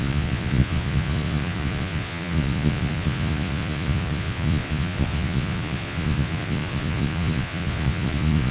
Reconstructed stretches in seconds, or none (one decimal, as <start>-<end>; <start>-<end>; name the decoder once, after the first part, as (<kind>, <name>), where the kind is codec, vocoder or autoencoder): 0.0-8.5 (vocoder, Vocos)